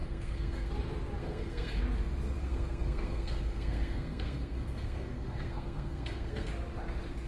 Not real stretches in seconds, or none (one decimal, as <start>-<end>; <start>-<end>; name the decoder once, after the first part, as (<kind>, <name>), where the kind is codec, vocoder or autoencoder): 0.0-0.7 (codec, SNAC); 1.2-1.8; 2.4-6.5